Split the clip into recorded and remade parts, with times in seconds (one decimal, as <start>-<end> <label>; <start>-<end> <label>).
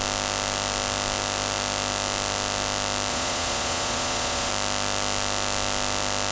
0.0-3.1 recorded; 3.1-4.5 remade; 4.5-6.3 recorded